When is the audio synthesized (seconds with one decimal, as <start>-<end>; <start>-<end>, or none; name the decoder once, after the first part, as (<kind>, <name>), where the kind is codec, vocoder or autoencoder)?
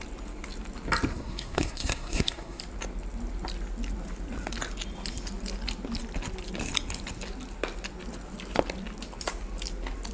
1.1-2.6 (codec, SNAC)